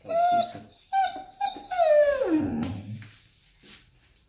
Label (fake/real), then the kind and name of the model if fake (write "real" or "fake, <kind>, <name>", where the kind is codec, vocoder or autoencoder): real